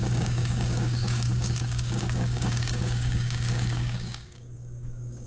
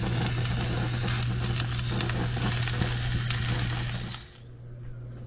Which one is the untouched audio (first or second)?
second